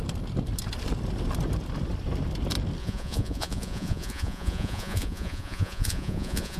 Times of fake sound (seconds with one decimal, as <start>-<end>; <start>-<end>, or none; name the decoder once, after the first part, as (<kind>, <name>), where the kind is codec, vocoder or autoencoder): 2.8-6.6 (vocoder, Vocos)